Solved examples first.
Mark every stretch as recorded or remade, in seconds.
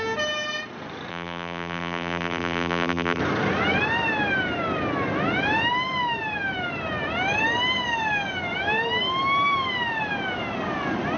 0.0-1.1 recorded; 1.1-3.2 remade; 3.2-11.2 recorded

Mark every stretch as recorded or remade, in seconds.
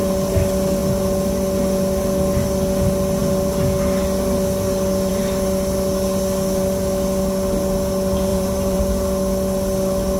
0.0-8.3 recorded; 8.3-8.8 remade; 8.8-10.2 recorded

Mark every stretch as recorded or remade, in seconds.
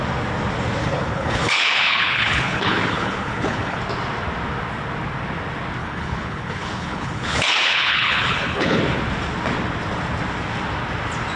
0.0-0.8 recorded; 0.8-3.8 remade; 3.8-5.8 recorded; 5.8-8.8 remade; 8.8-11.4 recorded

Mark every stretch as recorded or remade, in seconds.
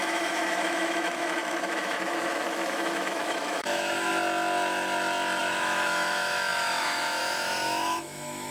0.0-4.1 remade; 4.1-5.4 recorded; 5.4-8.5 remade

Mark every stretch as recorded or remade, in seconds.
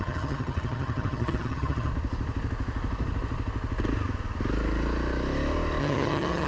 0.0-1.9 remade; 1.9-5.8 recorded; 5.8-6.5 remade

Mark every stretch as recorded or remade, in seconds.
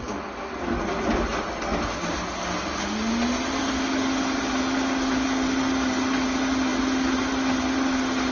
0.0-8.3 recorded